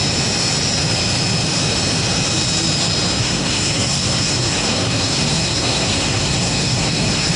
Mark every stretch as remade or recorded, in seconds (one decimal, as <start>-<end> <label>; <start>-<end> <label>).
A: 0.0-3.2 recorded; 3.2-7.4 remade